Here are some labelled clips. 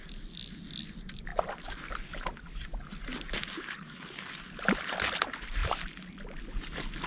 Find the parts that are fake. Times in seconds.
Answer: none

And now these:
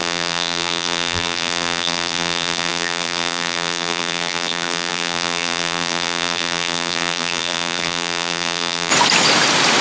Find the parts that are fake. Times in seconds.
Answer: 0.0-8.9 (vocoder, BigVGAN v2)

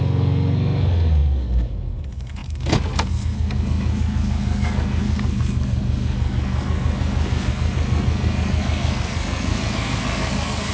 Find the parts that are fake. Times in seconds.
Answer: 0.0-10.7 (codec, SNAC)